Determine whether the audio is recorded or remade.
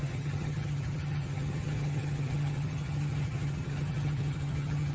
remade